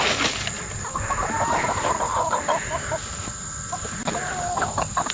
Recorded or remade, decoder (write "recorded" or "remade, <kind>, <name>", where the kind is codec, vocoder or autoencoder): recorded